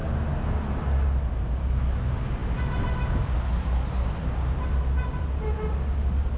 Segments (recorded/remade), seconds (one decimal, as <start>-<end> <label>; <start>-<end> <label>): 0.0-6.4 recorded